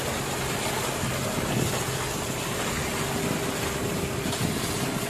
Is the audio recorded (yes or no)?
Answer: yes